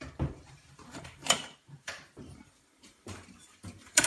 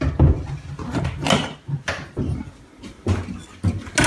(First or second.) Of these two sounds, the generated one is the first